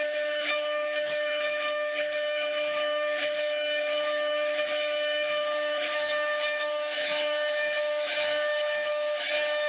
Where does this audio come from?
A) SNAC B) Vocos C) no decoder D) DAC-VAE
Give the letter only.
D